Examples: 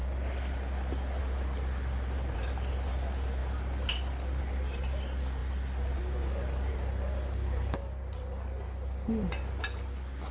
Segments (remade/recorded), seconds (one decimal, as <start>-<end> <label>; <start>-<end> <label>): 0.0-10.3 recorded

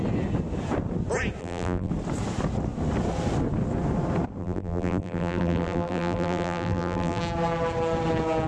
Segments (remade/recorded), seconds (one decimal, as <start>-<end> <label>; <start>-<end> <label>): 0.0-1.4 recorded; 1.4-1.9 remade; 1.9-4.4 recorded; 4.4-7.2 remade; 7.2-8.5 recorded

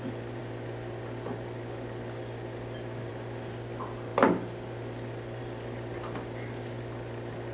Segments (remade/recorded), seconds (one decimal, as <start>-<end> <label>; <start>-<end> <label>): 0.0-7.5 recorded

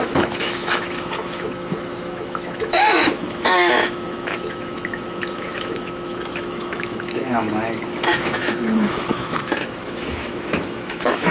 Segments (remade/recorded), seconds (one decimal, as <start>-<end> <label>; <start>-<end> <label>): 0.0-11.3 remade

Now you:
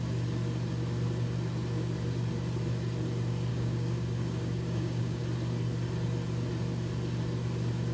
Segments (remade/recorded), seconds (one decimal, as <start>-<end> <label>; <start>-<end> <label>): 0.0-3.5 recorded; 3.5-5.2 remade; 5.2-7.9 recorded

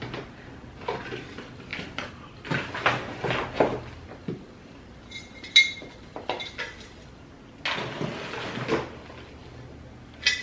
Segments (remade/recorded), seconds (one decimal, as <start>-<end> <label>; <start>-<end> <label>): 0.0-10.4 recorded

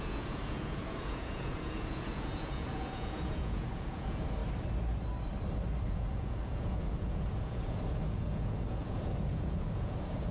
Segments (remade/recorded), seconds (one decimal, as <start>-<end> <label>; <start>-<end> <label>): 0.0-4.4 remade; 4.4-5.8 recorded; 5.8-10.3 remade

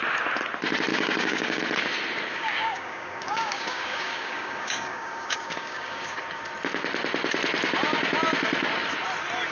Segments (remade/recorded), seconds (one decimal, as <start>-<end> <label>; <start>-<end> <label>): 0.0-0.9 recorded; 0.9-1.6 remade; 1.6-2.3 recorded; 2.3-6.2 remade; 6.2-9.5 recorded